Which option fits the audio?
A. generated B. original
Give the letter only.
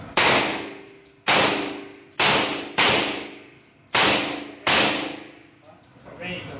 B